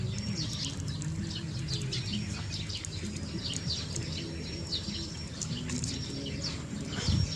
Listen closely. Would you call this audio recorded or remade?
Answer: recorded